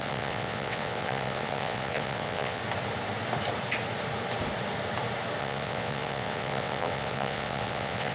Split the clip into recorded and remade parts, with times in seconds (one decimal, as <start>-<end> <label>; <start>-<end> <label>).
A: 0.0-2.6 remade; 2.6-5.4 recorded; 5.4-8.1 remade

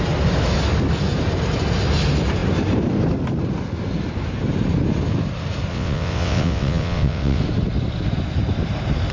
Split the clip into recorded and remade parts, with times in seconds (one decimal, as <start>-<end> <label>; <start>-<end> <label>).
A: 0.0-5.7 recorded; 5.7-7.4 remade; 7.4-9.1 recorded

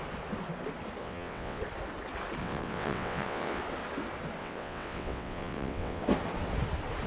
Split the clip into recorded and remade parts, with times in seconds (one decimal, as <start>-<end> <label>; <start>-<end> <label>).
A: 0.0-1.0 recorded; 1.0-1.6 remade; 1.6-2.4 recorded; 2.4-3.6 remade; 3.6-4.4 recorded; 4.4-6.0 remade; 6.0-7.1 recorded

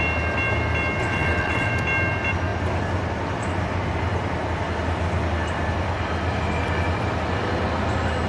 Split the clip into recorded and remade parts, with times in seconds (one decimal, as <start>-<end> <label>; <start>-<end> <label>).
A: 0.0-1.0 recorded; 1.0-1.7 remade; 1.7-8.3 recorded

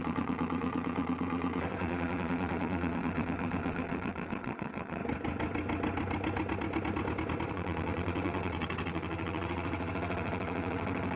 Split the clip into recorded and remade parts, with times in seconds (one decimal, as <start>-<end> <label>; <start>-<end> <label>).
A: 0.0-5.0 remade; 5.0-7.5 recorded; 7.5-11.2 remade